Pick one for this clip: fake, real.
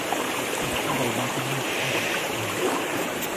fake